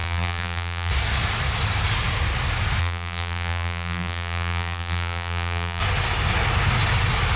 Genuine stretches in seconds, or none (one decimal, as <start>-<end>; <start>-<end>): 0.9-2.8; 5.8-7.4